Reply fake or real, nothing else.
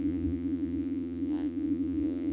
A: fake